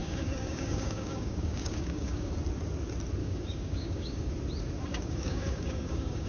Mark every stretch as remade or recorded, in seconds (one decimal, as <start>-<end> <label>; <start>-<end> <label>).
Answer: 0.0-2.3 remade; 2.3-3.2 recorded; 3.2-4.3 remade; 4.3-4.9 recorded; 4.9-6.3 remade